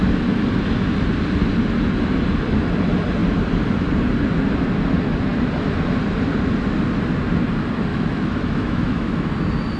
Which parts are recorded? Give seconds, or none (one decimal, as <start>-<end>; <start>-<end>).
0.0-7.9; 9.3-9.8